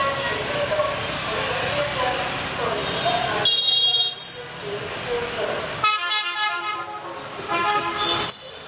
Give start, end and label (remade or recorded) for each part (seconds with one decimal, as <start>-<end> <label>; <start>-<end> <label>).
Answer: 0.0-8.7 recorded